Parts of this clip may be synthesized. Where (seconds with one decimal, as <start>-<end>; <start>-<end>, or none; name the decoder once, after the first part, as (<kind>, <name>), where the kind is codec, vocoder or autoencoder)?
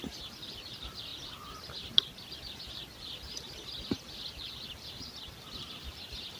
0.0-6.4 (vocoder, BigVGAN v2)